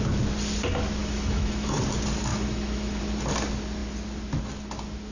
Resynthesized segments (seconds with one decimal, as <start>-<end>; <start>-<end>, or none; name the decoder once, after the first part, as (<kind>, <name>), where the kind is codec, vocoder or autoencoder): 1.0-1.8 (autoencoder, DAC-VAE); 2.3-3.0